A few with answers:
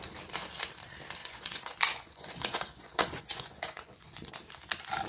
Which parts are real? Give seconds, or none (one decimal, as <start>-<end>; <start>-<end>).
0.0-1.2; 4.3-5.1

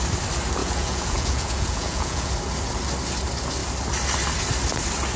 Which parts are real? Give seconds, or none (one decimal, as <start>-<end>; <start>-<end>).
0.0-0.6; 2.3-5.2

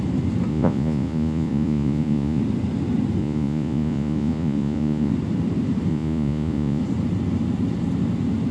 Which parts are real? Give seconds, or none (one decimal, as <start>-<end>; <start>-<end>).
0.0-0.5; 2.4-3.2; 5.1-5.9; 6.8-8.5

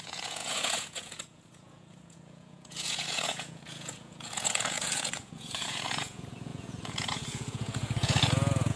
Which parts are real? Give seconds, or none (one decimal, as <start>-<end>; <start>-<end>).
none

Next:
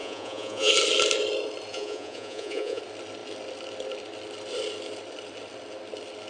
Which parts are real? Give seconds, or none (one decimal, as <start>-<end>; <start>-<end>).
0.7-1.7; 2.8-6.3

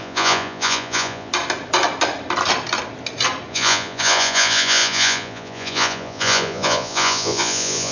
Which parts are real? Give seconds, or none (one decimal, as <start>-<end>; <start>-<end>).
1.3-3.5

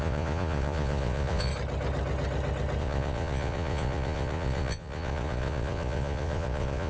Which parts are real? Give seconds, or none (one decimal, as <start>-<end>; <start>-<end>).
1.5-2.8

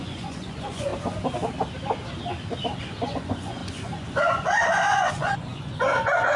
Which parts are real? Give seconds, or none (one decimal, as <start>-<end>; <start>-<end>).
0.9-2.8